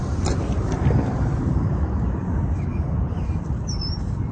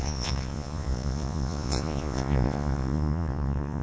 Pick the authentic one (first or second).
first